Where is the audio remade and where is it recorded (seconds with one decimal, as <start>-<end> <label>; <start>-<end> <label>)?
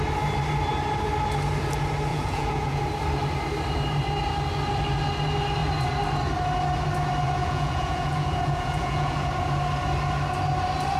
0.0-2.1 recorded; 2.1-2.8 remade; 2.8-7.4 recorded; 7.4-9.3 remade; 9.3-11.0 recorded